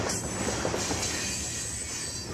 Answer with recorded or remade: recorded